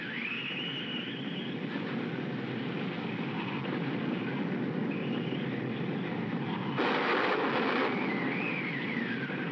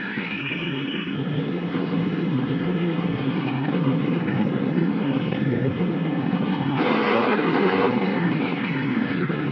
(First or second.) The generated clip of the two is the second